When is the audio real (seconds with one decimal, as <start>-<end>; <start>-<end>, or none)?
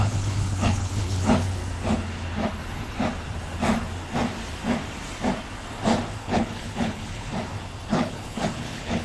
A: 1.6-6.2; 7.3-7.9